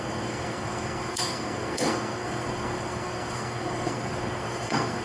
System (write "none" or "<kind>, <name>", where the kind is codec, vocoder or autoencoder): codec, SNAC